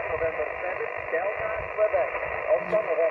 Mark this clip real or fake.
real